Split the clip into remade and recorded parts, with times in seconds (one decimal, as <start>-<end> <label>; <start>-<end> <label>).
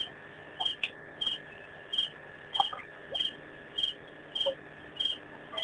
0.0-5.6 recorded